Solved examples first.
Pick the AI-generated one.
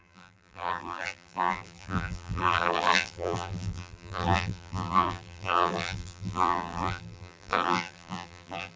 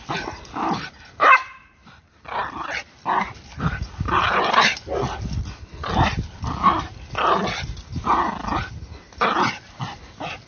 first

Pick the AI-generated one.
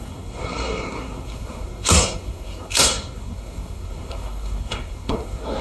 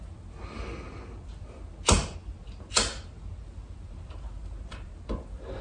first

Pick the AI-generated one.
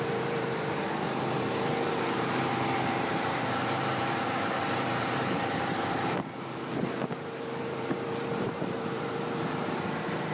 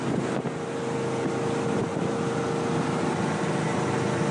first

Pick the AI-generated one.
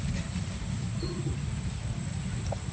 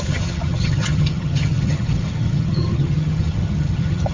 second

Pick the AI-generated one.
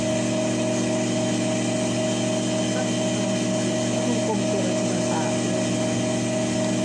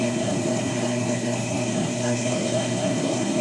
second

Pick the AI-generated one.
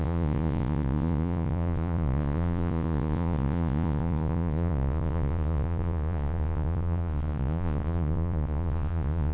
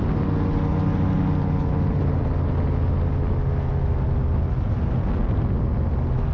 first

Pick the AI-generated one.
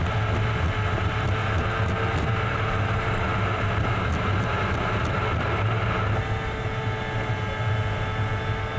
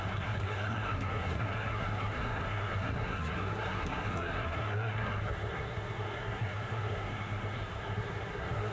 second